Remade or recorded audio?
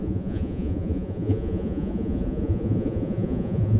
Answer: remade